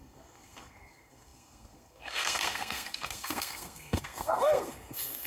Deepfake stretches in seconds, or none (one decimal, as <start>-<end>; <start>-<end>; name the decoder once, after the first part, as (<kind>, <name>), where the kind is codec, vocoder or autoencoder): 0.0-5.3 (codec, SNAC)